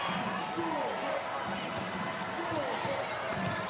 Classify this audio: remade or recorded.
recorded